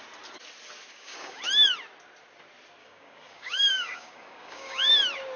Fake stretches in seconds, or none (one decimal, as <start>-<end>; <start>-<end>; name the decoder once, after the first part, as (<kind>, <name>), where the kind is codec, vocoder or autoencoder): 0.9-1.4 (codec, DAC); 2.8-4.9

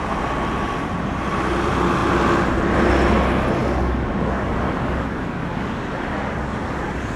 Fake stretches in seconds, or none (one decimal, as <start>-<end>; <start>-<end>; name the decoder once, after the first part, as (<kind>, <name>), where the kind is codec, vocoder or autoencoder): 3.6-7.2 (codec, DAC)

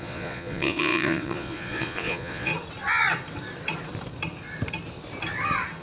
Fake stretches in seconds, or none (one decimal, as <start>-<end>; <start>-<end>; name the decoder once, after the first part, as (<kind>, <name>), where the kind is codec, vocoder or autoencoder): 0.0-2.5 (vocoder, Vocos)

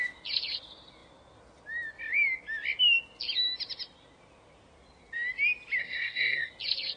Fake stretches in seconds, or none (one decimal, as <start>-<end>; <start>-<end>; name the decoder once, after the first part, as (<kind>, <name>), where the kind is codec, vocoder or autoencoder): 5.8-6.5 (codec, SNAC)

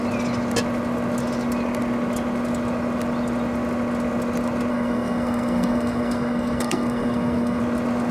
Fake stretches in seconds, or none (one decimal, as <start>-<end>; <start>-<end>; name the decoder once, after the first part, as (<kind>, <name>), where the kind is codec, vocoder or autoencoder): 4.7-7.6 (codec, SNAC)

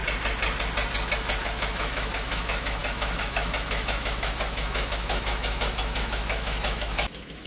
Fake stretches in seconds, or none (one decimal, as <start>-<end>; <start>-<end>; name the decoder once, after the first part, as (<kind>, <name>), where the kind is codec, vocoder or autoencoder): 1.4-7.5 (autoencoder, DAC-VAE)

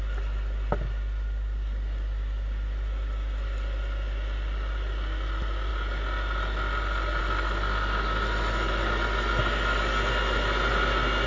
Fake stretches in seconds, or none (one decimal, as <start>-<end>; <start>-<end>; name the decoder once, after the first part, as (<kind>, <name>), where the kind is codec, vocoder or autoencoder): none